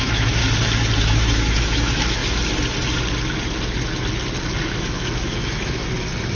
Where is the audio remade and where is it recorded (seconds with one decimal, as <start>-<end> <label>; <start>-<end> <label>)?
0.0-0.4 remade; 0.4-1.0 recorded; 1.0-2.2 remade; 2.2-4.7 recorded; 4.7-5.8 remade; 5.8-6.4 recorded